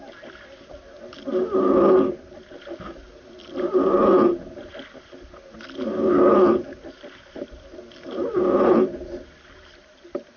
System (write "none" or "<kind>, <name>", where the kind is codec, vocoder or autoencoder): none